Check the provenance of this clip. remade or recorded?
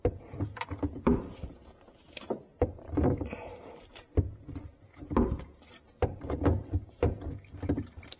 remade